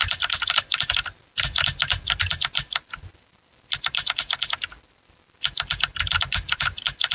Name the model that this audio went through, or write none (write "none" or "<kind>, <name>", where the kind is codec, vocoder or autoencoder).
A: none